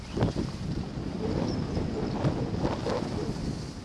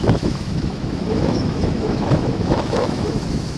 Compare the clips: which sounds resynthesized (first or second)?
second